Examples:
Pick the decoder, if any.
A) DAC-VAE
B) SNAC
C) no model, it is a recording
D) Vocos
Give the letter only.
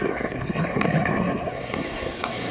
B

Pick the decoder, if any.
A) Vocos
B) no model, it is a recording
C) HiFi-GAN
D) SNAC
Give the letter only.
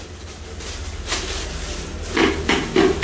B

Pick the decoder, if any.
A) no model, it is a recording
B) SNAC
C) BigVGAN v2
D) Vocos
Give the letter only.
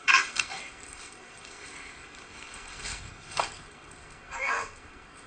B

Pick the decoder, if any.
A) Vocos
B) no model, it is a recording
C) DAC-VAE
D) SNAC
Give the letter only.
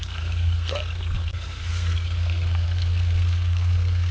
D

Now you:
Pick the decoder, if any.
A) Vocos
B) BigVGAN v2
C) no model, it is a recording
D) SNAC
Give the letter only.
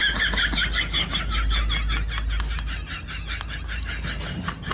C